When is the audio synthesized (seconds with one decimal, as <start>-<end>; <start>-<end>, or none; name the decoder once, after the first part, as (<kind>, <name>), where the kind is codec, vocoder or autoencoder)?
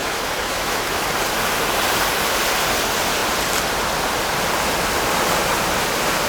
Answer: 0.0-1.0 (autoencoder, DAC-VAE)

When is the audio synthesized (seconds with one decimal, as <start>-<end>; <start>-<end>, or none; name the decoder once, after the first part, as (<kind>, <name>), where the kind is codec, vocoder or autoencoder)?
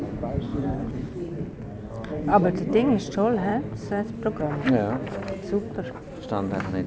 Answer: none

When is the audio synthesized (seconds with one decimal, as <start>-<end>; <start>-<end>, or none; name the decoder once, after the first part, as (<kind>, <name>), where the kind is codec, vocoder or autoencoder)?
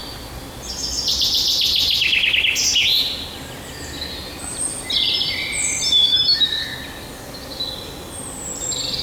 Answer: 6.0-6.7 (autoencoder, DAC-VAE)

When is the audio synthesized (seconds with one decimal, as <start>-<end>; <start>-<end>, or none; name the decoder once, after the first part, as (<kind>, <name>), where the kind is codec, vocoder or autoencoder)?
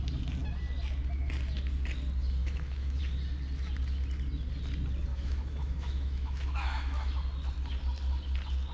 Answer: 2.4-3.0 (autoencoder, DAC-VAE); 5.1-7.1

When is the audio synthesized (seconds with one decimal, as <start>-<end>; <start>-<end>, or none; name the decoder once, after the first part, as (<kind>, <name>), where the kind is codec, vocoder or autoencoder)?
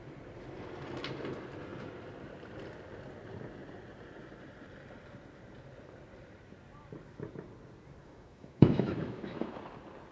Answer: 8.0-9.6 (autoencoder, DAC-VAE)